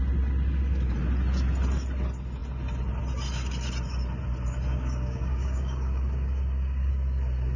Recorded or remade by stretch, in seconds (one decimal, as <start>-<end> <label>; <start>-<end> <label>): 0.0-4.7 recorded; 4.7-6.9 remade; 6.9-7.6 recorded